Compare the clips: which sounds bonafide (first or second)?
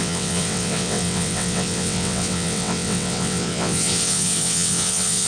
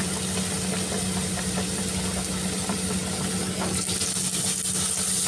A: second